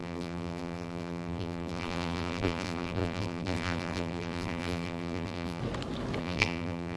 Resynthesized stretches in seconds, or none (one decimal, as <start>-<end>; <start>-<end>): 0.0-5.6; 6.2-7.0